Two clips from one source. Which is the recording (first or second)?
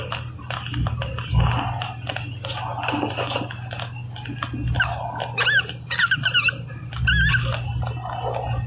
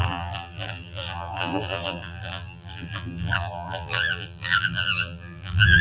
first